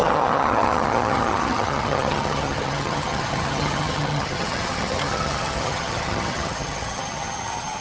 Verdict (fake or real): fake